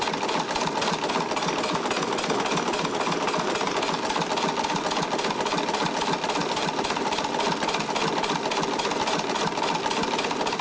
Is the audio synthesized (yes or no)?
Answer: no